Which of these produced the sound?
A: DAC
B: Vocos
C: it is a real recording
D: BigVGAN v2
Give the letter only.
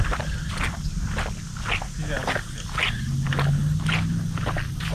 C